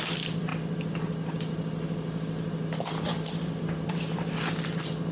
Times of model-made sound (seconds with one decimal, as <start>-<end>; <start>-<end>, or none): none

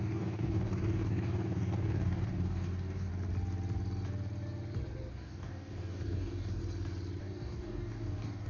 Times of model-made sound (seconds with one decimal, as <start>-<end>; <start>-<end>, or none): 0.0-3.1; 5.1-6.6; 7.2-8.5

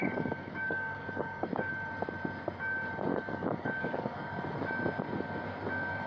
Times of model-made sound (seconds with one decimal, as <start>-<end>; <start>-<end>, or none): 0.0-1.7; 3.1-4.4

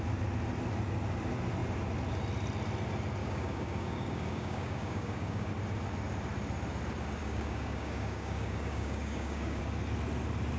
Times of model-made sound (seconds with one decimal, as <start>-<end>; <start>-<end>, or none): 3.2-5.5; 7.2-9.6

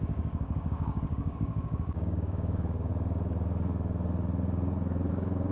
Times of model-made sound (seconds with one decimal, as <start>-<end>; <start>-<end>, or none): 0.0-2.9; 5.1-5.5

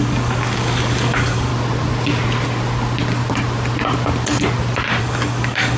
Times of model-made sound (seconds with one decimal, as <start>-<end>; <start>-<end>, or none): 0.0-1.5; 5.0-5.8

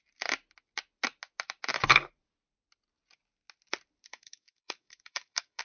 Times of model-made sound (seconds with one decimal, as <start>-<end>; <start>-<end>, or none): 4.1-5.6

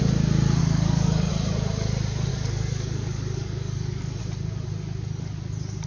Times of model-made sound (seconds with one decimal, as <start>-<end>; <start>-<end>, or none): 0.6-1.3; 2.3-4.2